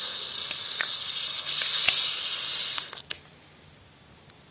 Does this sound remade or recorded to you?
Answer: recorded